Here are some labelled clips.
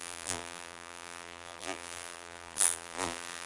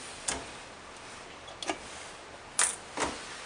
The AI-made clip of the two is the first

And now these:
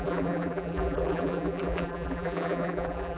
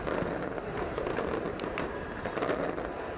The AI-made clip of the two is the first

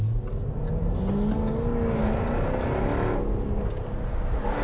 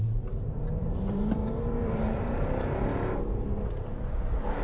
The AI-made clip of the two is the second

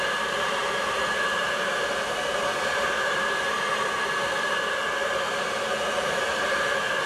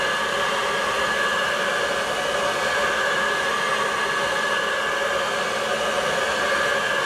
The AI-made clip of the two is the first